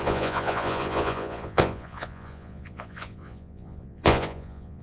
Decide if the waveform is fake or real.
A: fake